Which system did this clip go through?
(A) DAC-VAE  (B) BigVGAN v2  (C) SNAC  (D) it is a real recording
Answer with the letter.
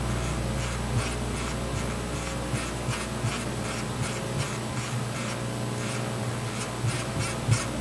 D